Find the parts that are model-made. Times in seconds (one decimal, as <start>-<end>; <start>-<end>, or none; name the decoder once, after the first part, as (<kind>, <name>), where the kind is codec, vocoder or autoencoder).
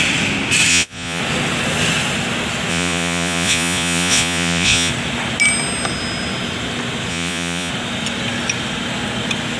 0.7-1.2 (vocoder, Vocos); 2.7-4.9; 7.1-7.7